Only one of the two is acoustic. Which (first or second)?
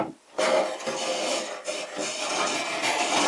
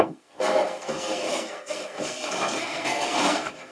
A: first